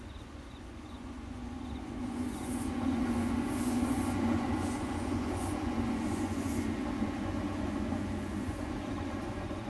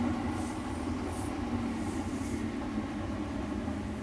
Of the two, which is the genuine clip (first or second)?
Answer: second